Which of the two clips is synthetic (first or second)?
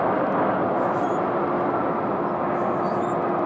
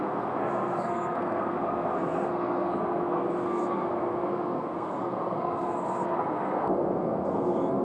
second